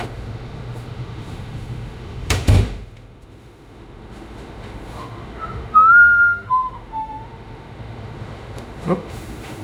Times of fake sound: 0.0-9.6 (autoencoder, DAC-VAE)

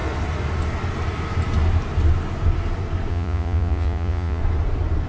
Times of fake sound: 3.1-4.4 (vocoder, Vocos)

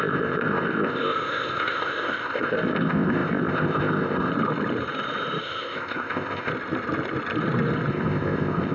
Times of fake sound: 0.0-4.3 (codec, ZipCodec); 5.4-6.5; 7.9-8.7

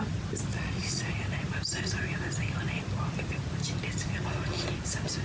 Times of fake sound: 0.5-1.1 (vocoder, Vocos)

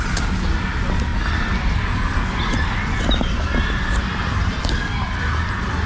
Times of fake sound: none

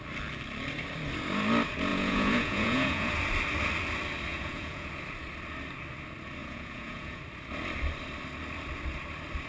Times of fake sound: 1.9-3.1 (vocoder, Vocos); 4.3-4.9; 6.4-7.2